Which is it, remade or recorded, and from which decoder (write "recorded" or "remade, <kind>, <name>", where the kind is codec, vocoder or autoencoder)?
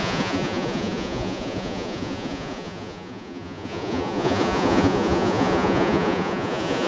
remade, vocoder, Vocos